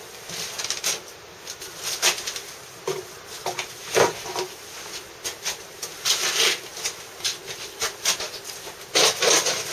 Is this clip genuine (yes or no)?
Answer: yes